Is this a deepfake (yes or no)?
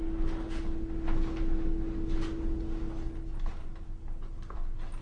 no